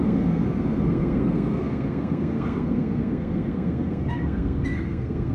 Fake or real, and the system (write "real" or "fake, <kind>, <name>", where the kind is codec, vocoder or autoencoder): fake, codec, SNAC